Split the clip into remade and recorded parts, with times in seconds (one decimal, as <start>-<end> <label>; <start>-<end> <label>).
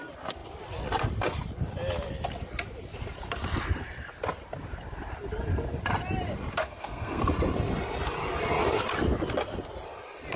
0.0-6.6 recorded; 6.6-7.2 remade; 7.2-10.4 recorded